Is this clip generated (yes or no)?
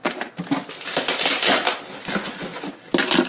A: no